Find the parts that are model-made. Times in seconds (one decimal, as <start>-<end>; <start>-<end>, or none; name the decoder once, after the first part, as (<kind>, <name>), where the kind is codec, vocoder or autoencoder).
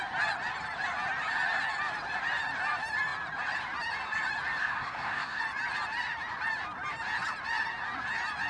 4.6-5.4 (codec, SNAC)